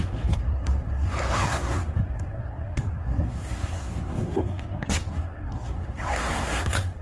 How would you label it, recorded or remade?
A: remade